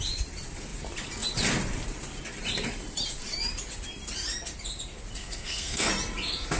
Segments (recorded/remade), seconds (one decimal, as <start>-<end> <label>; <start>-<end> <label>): 0.0-5.2 recorded; 5.2-5.9 remade; 5.9-6.6 recorded